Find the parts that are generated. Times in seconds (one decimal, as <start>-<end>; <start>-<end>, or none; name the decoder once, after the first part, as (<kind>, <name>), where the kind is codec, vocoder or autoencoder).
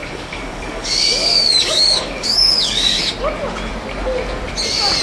0.0-3.0 (codec, DAC)